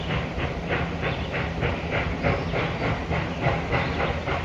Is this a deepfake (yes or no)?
yes